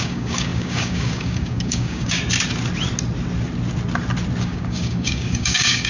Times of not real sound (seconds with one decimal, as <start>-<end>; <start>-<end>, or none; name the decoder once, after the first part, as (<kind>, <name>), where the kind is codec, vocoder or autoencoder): 0.0-2.2 (codec, DAC); 4.4-5.9